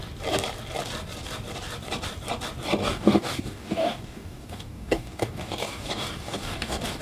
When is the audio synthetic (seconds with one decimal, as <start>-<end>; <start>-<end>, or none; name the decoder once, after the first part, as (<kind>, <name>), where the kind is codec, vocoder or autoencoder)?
2.8-7.0 (codec, DAC)